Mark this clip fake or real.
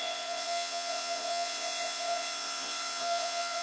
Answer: fake